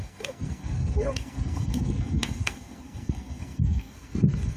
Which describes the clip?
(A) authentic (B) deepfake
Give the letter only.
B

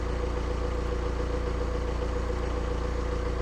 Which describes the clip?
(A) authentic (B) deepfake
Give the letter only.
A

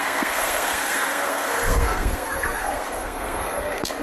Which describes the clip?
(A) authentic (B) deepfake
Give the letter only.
B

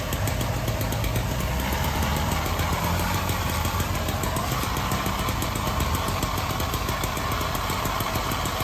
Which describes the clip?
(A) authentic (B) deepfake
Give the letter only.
A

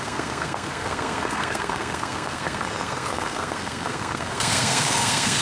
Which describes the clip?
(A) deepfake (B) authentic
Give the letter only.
A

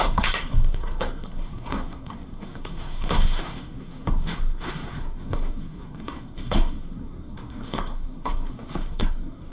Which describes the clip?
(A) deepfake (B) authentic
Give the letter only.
A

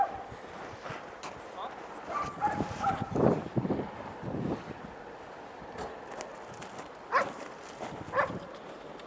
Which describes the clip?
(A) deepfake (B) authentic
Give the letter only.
B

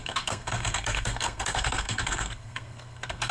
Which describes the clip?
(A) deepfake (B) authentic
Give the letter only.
A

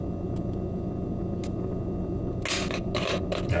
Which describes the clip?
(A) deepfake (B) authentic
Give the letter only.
B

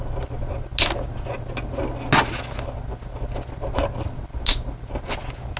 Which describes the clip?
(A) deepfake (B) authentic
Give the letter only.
B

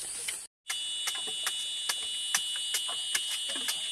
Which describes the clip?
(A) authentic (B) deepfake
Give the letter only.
A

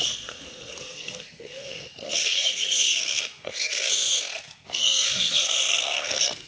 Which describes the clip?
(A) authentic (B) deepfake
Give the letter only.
B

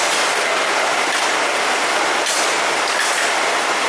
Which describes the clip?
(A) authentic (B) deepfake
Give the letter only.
A